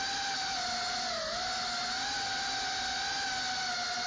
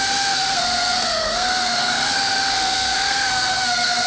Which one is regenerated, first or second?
second